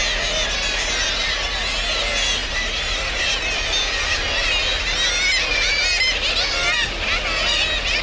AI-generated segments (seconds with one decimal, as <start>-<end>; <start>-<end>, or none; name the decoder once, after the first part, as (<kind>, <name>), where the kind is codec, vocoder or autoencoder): 2.4-3.3 (vocoder, BigVGAN v2)